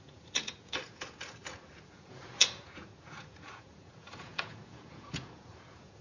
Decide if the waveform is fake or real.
fake